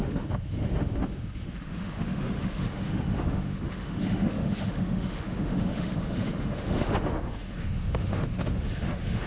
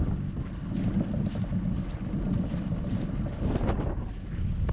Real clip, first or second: second